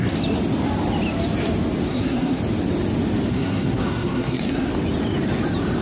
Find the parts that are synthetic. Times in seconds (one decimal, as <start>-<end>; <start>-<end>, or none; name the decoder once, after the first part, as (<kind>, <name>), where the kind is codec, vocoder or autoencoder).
1.9-2.4 (codec, SNAC); 3.3-4.7